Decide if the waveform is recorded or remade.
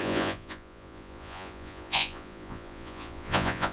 remade